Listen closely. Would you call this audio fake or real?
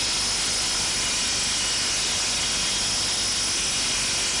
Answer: real